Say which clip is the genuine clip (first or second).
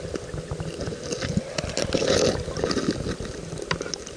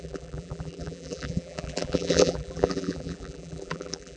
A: first